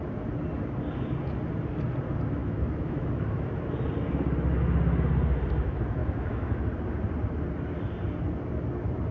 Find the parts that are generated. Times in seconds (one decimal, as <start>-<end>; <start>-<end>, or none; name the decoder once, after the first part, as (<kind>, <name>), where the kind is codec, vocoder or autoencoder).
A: 2.4-3.7 (autoencoder, DAC-VAE); 6.0-6.6